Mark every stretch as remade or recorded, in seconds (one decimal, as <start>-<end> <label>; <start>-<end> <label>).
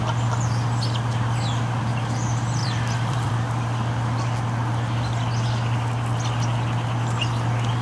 0.0-2.6 recorded; 2.6-3.3 remade; 3.3-7.8 recorded